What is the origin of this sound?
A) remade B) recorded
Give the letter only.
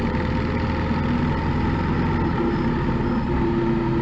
B